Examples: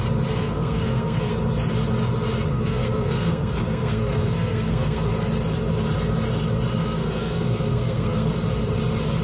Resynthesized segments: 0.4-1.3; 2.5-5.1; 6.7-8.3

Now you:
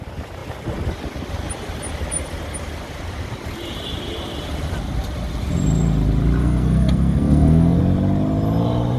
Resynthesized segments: 6.4-7.8

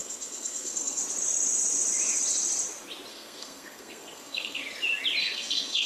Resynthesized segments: 0.0-1.0; 3.1-4.6; 5.2-5.9

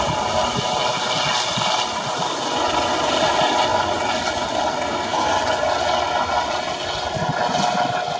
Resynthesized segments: 4.7-5.3

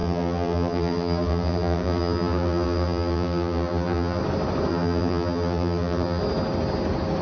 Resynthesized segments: 0.0-4.2; 4.7-6.2